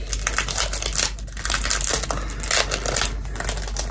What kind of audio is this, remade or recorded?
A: recorded